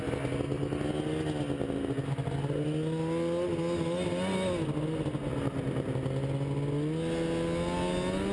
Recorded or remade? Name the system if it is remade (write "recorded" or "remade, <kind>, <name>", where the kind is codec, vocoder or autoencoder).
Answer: recorded